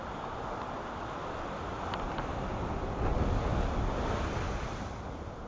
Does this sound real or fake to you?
real